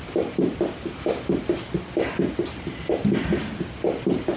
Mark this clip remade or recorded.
recorded